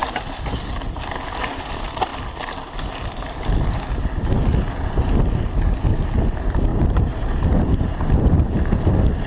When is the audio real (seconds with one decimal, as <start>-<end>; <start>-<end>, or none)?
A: 0.0-6.7; 8.9-9.3